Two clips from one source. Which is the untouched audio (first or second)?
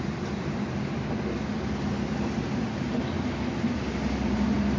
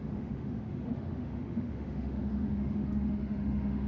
first